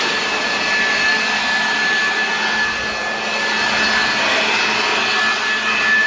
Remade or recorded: recorded